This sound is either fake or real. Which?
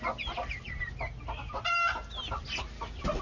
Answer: real